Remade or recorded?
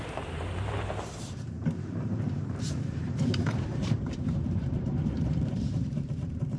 remade